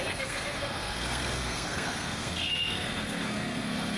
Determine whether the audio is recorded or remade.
remade